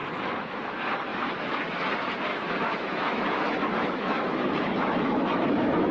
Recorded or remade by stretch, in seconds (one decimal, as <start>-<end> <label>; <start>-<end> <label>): 0.0-0.6 remade; 0.6-1.1 recorded; 1.1-1.6 remade; 1.6-2.3 recorded; 2.3-5.9 remade